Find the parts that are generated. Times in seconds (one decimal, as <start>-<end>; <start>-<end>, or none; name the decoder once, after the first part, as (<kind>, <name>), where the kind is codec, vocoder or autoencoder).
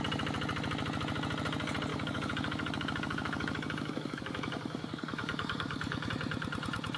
1.9-6.1 (codec, DAC)